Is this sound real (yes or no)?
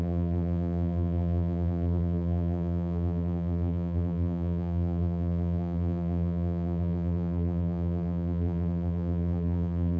no